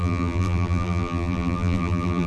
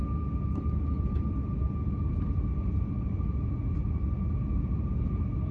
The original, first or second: second